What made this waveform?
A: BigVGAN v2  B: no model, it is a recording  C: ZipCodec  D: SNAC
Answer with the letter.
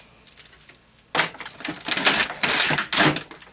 B